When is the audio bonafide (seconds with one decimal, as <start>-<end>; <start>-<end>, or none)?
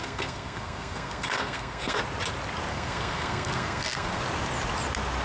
2.0-2.7; 4.2-5.2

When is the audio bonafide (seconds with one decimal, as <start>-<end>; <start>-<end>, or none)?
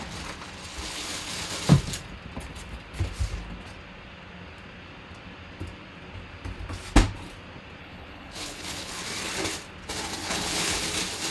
0.0-0.7; 1.3-7.8; 9.0-10.2; 10.8-11.3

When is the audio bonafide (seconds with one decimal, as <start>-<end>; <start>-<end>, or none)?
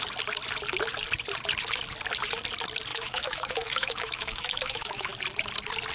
0.0-2.9; 5.1-5.9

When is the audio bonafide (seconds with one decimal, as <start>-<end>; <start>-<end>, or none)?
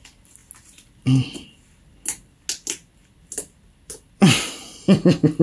0.0-5.4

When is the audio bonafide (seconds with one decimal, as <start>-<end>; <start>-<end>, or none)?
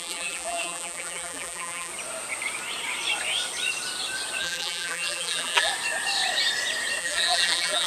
1.9-4.4; 5.7-7.0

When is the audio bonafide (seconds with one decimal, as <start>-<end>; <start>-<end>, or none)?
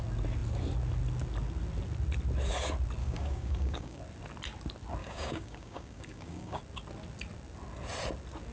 0.0-3.0; 4.0-5.0; 6.6-8.5